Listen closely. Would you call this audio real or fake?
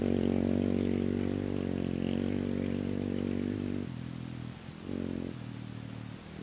real